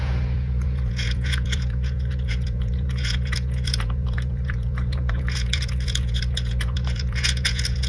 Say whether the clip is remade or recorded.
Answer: remade